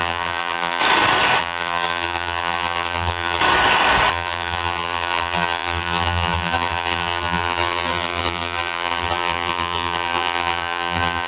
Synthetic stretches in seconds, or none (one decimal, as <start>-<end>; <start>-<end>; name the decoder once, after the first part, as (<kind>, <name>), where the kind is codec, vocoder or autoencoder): 0.0-0.8 (vocoder, BigVGAN v2); 1.4-3.4; 4.1-11.3